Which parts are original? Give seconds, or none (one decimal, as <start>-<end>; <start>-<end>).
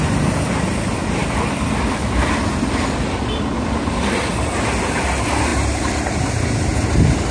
0.0-1.2; 4.5-5.5; 6.4-7.3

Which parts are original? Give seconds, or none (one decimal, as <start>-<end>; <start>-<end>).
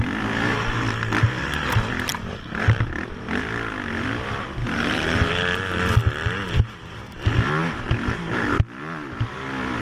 0.0-2.1; 2.8-4.6; 5.3-9.8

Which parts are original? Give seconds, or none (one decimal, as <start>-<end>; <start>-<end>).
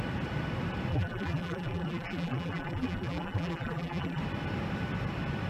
0.0-0.9; 4.2-5.5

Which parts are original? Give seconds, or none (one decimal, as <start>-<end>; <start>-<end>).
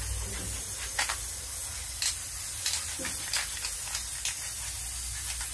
0.0-5.5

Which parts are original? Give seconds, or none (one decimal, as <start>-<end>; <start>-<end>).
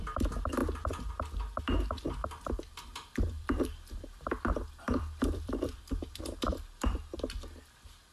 0.0-0.6; 1.1-2.2; 6.2-8.1